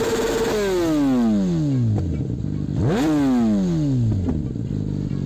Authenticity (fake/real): real